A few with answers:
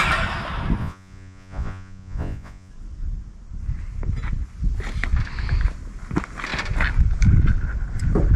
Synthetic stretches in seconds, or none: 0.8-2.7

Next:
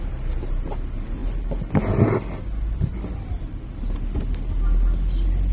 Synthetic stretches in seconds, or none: none

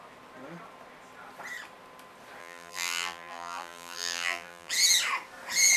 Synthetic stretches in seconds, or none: 2.4-4.7

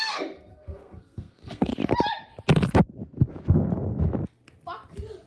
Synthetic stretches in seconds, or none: 0.0-1.7

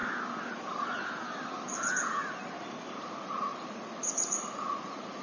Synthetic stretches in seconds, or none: 3.1-5.2

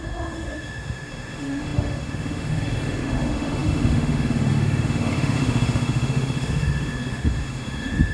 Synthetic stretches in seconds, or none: 0.0-8.1

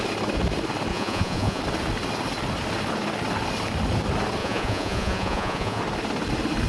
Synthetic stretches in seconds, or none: 0.9-1.6; 4.4-5.8